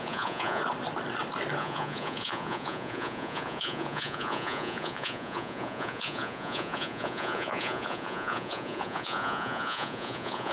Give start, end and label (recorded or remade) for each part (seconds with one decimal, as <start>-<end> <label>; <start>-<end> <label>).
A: 0.0-0.6 remade; 0.6-1.6 recorded; 1.6-10.5 remade